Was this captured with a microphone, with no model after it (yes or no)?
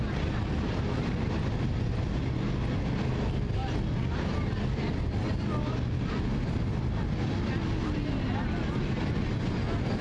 yes